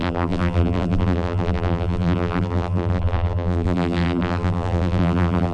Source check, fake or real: fake